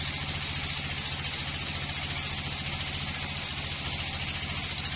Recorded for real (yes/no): yes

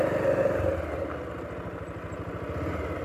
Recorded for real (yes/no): yes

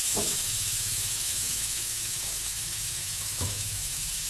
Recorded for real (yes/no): no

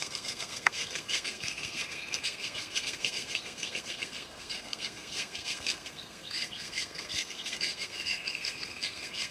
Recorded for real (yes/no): no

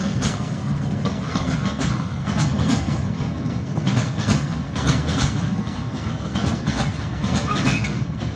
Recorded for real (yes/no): no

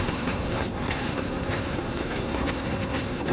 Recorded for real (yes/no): no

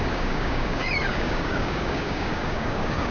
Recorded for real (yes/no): no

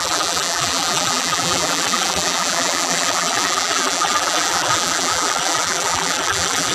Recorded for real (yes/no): no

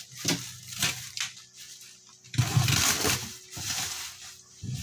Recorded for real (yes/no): yes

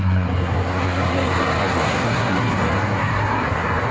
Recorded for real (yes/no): no